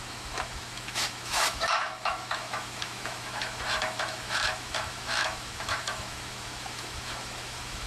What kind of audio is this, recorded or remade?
remade